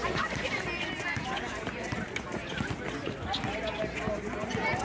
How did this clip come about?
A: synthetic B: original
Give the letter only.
B